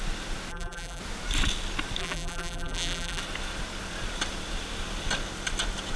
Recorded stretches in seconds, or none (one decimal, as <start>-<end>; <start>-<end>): 0.0-0.5; 1.0-2.0; 3.2-6.0